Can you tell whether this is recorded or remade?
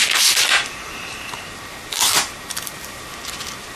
remade